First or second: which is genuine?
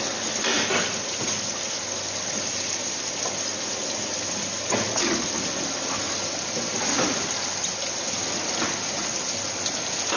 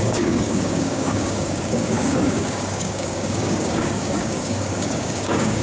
first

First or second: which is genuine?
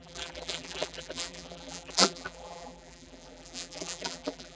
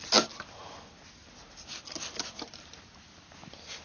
second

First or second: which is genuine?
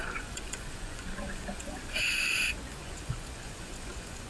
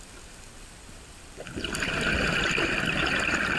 second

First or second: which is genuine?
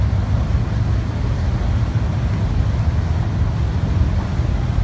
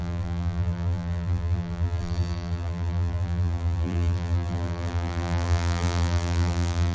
first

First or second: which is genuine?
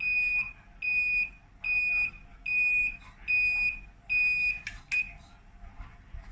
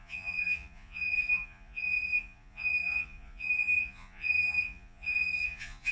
first